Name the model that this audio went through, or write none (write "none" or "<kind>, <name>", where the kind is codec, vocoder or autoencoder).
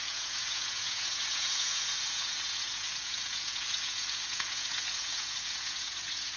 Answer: vocoder, Vocos